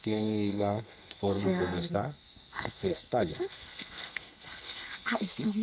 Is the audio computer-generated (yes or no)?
yes